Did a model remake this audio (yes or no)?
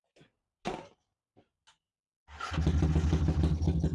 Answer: no